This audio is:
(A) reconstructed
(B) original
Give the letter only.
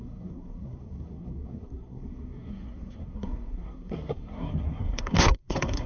A